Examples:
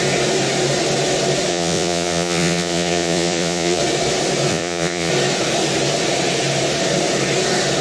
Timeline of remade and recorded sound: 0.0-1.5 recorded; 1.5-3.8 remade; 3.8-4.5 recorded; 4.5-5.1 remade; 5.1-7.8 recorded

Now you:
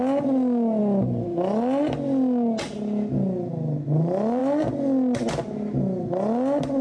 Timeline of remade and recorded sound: 0.0-6.8 recorded

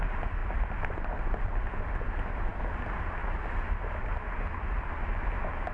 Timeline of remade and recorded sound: 0.0-5.7 recorded

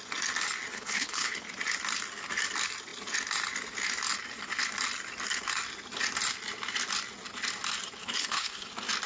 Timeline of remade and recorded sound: 0.0-0.7 recorded; 0.7-1.4 remade; 1.4-8.0 recorded; 8.0-8.7 remade; 8.7-9.1 recorded

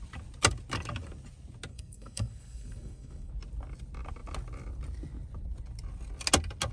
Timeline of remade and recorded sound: 0.0-1.7 recorded; 1.7-3.3 remade; 3.3-6.7 recorded

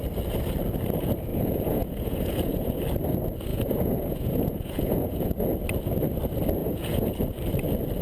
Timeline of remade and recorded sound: 0.0-1.3 recorded; 1.3-2.8 remade; 2.8-3.5 recorded; 3.5-5.3 remade; 5.3-6.6 recorded; 6.6-7.1 remade; 7.1-8.0 recorded